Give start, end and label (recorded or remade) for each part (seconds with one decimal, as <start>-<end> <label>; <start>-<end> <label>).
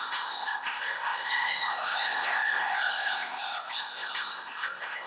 0.0-5.1 remade